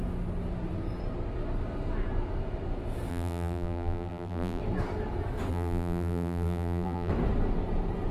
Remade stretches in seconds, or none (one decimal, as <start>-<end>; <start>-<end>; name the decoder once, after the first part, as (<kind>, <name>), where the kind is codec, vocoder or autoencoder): 3.1-4.6 (vocoder, BigVGAN v2); 5.5-7.1